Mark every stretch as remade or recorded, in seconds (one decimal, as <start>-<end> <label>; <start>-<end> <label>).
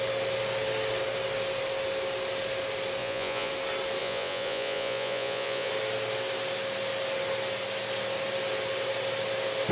0.0-3.0 recorded; 3.0-3.5 remade; 3.5-4.0 recorded; 4.0-5.7 remade; 5.7-9.7 recorded